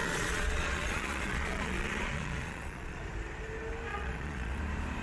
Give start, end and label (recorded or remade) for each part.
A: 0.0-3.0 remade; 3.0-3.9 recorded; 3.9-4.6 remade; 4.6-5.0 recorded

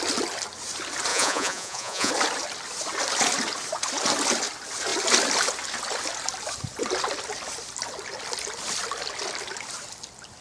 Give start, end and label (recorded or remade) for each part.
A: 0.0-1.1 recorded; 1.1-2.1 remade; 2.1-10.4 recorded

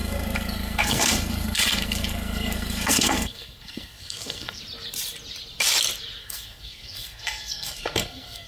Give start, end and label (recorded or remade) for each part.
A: 0.0-4.6 remade; 4.6-6.2 recorded; 6.2-8.5 remade

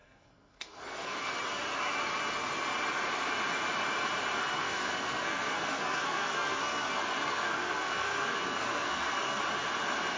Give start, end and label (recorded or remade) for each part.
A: 0.0-1.3 remade; 1.3-4.4 recorded; 4.4-9.4 remade; 9.4-10.2 recorded

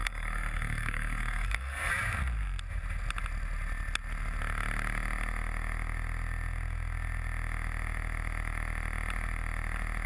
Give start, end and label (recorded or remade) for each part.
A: 0.0-1.9 remade; 1.9-10.1 recorded